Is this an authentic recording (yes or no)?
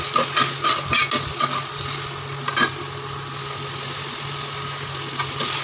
yes